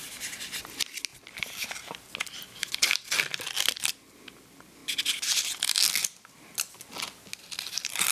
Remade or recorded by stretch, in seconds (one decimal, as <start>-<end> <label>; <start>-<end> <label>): 0.0-8.1 recorded